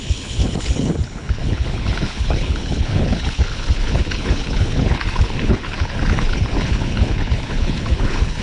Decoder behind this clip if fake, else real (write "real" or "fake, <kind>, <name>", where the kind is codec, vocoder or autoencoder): fake, codec, HILCodec